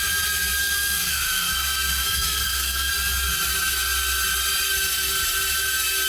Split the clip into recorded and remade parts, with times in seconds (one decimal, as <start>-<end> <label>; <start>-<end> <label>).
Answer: 0.0-0.6 recorded; 0.6-2.9 remade; 2.9-6.1 recorded